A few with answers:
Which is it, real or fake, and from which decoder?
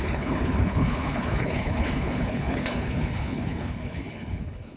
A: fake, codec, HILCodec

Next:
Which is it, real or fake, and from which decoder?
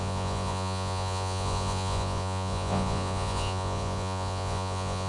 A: fake, vocoder, Vocos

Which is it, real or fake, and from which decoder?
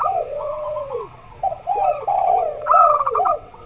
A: fake, vocoder, WaveNeXt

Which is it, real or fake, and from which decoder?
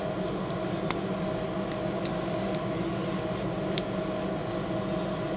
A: real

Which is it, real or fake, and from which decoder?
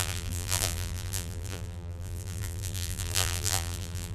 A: fake, vocoder, BigVGAN v2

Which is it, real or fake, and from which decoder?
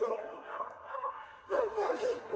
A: fake, codec, SNAC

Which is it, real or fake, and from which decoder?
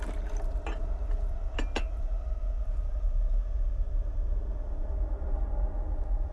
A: real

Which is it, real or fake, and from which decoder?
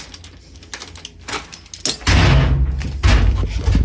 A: real